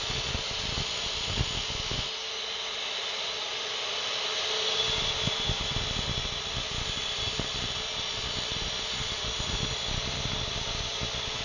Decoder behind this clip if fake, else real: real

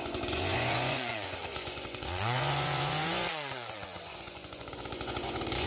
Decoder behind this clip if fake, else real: fake, vocoder, Vocos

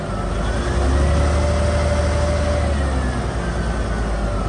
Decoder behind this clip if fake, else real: real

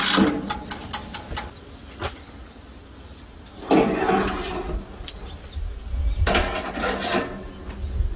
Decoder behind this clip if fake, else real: real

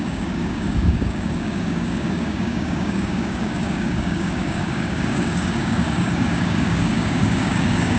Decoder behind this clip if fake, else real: fake, codec, DAC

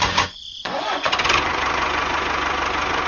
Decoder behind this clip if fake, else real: fake, vocoder, Vocos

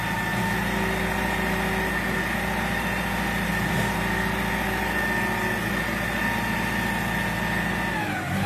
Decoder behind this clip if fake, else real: real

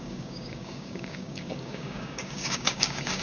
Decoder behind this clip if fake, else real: fake, codec, DAC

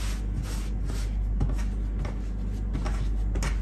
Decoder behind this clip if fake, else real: real